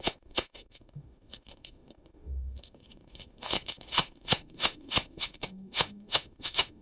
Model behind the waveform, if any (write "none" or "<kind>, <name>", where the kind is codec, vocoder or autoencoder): autoencoder, DAC-VAE